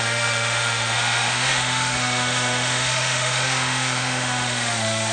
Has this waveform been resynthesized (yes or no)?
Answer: yes